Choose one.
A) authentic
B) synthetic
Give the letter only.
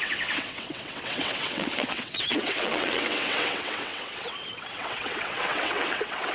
B